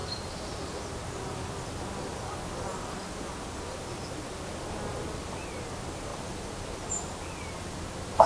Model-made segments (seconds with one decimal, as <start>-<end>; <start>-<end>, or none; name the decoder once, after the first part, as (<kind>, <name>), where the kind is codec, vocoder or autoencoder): 0.0-1.1 (vocoder, BigVGAN v2); 2.7-3.3